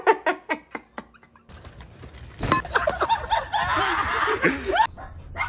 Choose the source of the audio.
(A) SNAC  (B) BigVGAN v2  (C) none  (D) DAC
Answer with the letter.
C